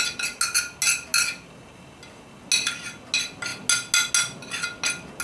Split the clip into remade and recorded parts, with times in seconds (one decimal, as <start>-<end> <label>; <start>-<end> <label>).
0.0-5.2 recorded